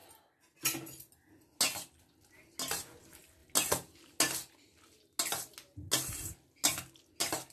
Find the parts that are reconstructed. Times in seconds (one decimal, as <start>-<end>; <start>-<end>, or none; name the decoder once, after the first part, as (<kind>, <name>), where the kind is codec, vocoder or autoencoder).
none